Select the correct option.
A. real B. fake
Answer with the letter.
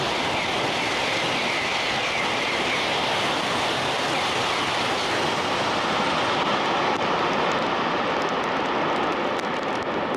A